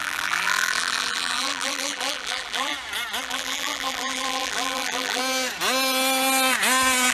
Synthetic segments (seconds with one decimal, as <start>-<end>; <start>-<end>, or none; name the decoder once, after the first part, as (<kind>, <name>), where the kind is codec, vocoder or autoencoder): 0.0-2.7 (vocoder, BigVGAN v2); 3.2-5.2